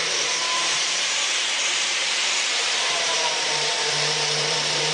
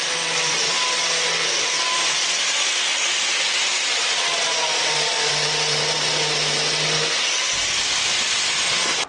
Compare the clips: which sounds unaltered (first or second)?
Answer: second